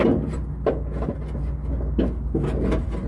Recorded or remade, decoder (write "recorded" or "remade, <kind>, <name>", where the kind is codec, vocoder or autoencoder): recorded